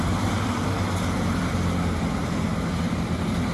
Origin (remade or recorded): recorded